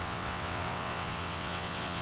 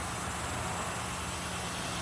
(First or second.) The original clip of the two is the second